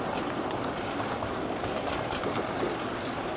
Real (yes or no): yes